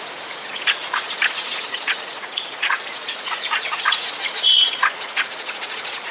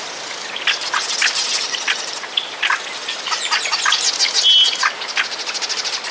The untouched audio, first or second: second